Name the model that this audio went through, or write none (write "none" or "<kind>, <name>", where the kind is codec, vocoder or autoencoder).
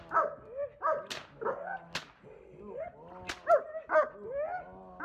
none